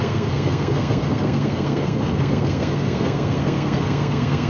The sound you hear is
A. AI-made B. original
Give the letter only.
A